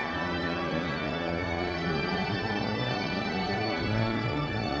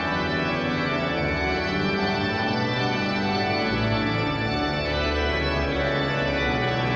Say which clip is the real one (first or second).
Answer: second